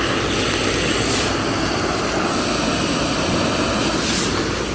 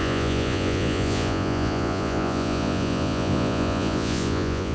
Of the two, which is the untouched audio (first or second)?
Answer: first